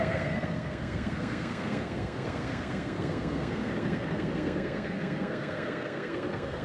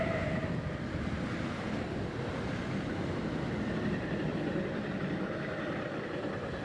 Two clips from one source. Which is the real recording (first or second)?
second